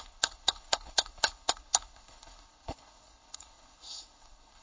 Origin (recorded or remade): remade